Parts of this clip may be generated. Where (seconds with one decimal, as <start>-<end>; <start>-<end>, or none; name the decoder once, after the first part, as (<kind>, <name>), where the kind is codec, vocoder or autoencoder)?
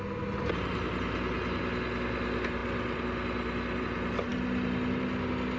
none